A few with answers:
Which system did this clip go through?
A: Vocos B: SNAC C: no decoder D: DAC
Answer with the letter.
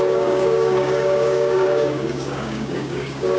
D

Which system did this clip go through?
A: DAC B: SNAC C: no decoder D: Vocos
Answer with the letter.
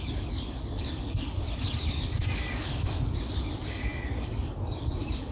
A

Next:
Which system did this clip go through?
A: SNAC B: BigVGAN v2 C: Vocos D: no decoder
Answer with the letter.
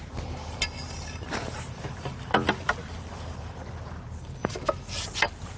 D